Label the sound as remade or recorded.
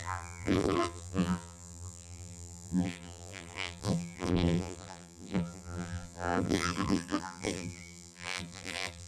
remade